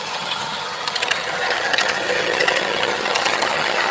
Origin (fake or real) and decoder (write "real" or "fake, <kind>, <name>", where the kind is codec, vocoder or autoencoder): fake, vocoder, HiFi-GAN